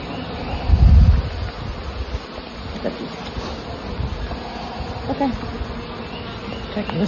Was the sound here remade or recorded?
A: recorded